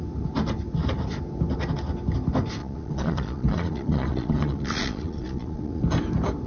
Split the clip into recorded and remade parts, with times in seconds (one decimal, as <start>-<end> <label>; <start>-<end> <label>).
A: 0.0-2.6 recorded; 2.6-5.8 remade; 5.8-6.5 recorded